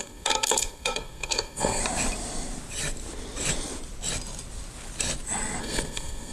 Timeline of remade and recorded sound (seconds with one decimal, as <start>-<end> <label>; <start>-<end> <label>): 0.0-1.8 remade; 1.8-5.6 recorded; 5.6-6.3 remade